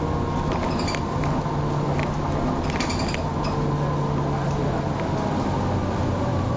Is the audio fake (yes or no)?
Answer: no